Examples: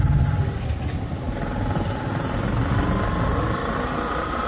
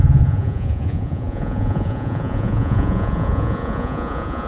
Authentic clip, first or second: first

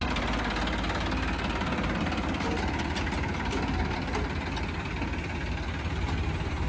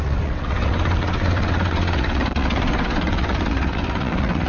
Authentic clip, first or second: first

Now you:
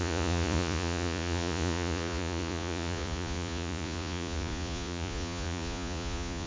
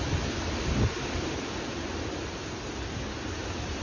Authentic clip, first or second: second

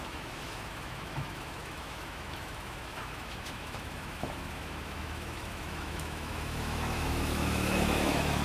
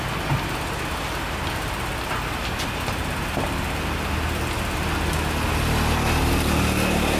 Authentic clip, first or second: second